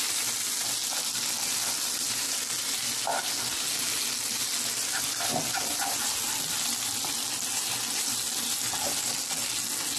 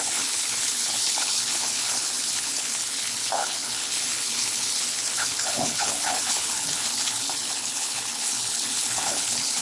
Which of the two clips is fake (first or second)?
second